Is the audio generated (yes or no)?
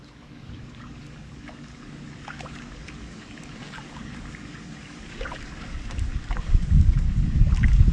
yes